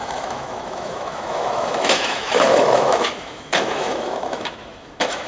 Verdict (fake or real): fake